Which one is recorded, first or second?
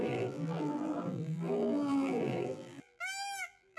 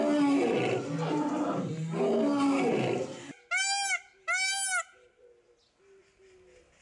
second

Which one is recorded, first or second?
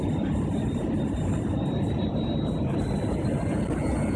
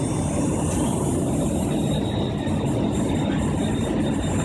second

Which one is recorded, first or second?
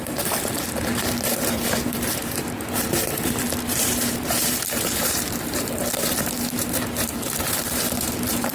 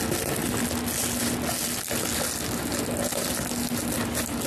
second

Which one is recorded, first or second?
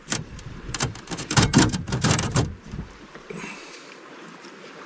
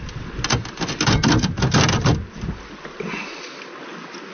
second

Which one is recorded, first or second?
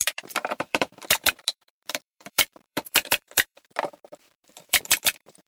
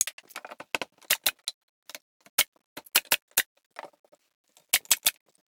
second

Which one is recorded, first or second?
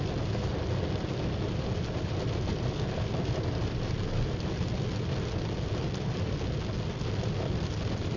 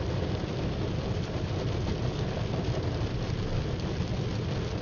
first